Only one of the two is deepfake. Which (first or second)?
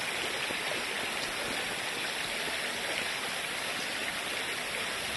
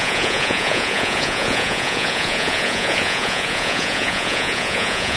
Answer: second